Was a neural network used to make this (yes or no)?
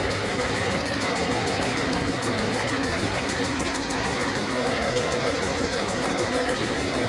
yes